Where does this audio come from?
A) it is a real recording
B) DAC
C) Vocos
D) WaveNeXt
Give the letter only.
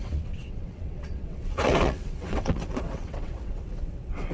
D